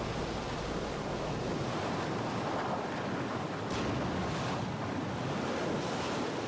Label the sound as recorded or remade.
recorded